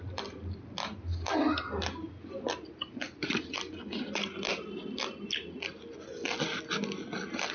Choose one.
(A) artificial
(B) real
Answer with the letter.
B